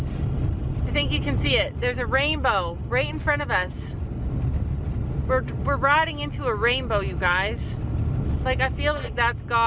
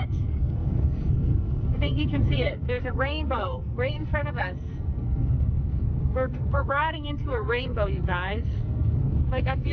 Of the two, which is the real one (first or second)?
first